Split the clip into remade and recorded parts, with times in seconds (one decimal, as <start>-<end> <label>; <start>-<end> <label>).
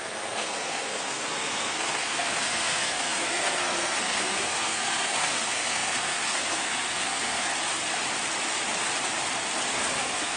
0.0-7.5 remade; 7.5-10.0 recorded; 10.0-10.4 remade